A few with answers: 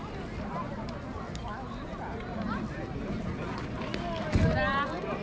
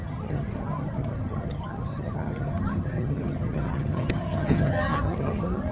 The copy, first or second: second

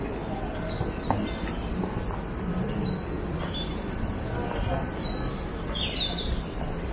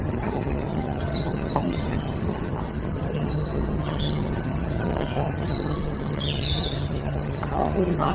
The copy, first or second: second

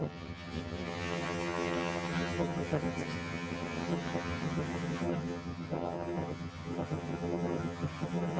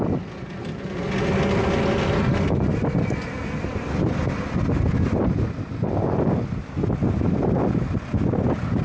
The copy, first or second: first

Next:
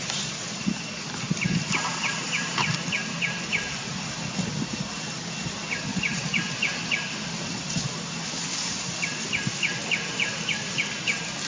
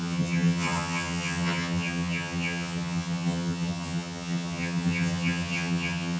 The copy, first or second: second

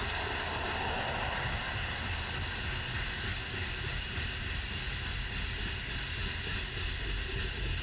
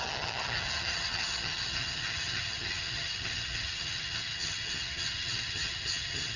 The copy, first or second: second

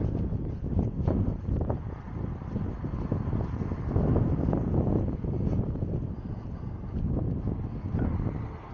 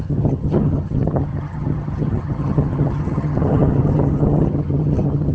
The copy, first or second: second